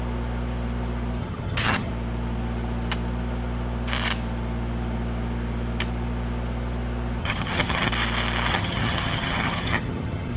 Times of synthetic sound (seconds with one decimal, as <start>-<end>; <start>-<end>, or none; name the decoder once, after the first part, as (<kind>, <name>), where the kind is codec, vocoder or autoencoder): 1.2-1.9 (vocoder, HiFi-GAN); 7.2-7.9; 8.5-10.4